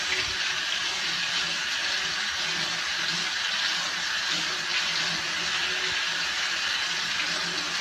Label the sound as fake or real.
real